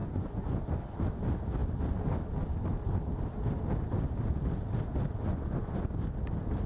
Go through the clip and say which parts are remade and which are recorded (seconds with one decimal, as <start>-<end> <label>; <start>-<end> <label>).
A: 0.0-0.6 remade; 0.6-5.2 recorded; 5.2-5.9 remade; 5.9-6.7 recorded